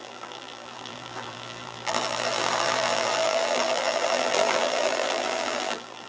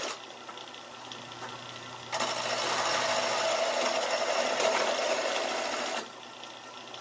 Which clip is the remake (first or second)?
first